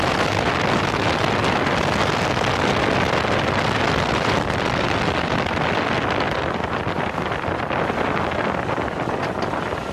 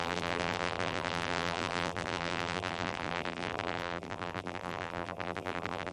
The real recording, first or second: first